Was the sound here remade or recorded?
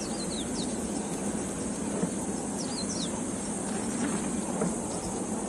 recorded